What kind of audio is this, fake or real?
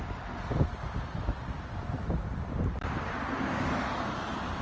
real